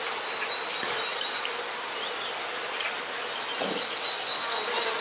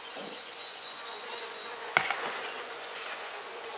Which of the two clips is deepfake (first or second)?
second